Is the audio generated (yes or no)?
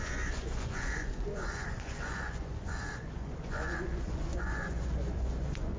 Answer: yes